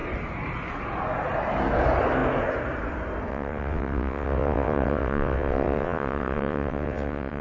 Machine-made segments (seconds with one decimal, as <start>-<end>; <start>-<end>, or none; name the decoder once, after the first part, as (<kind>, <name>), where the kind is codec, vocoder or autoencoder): 3.3-7.4 (vocoder, WaveNeXt)